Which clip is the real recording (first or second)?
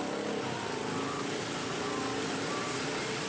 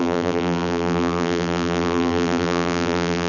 first